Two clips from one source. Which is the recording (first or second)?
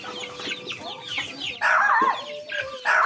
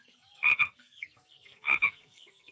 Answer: first